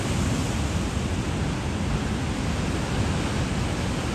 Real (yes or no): yes